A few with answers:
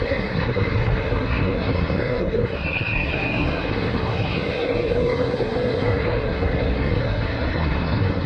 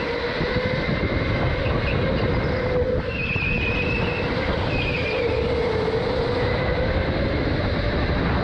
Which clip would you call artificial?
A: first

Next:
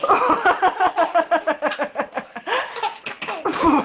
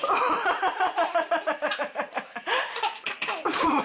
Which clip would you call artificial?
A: second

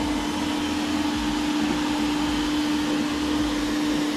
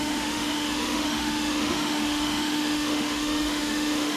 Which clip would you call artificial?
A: second